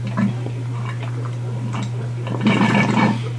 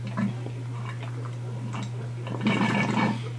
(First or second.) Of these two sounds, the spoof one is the first